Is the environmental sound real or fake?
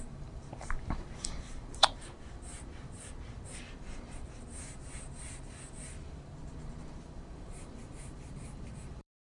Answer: fake